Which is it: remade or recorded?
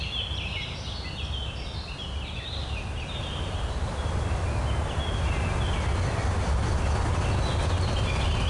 recorded